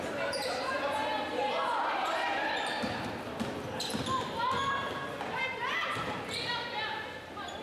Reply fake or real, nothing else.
fake